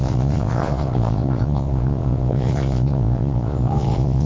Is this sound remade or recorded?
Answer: remade